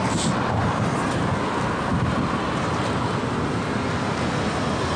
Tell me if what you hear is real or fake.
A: real